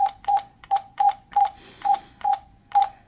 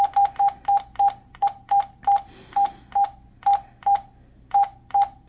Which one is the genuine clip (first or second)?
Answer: second